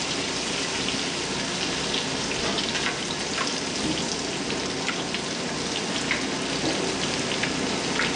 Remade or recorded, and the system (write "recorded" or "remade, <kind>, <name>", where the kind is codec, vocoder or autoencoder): recorded